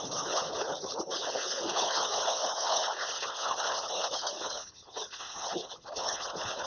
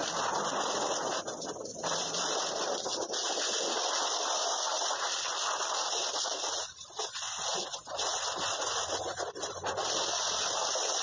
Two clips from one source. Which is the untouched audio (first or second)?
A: second